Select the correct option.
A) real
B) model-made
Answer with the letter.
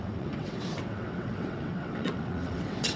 B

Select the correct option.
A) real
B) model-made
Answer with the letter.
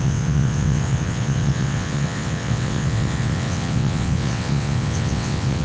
B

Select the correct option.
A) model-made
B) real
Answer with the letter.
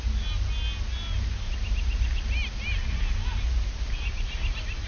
B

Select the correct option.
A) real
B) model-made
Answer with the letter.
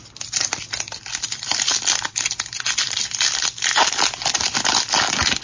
A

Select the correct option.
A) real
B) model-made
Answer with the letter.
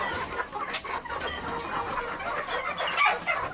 A